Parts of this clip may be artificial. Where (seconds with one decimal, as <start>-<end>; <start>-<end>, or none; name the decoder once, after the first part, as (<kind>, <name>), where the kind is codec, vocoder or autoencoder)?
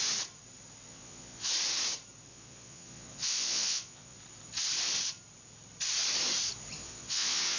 0.9-1.5 (vocoder, Vocos); 2.3-4.2; 6.8-7.6